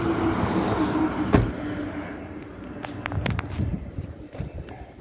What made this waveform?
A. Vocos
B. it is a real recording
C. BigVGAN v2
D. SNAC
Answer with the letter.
C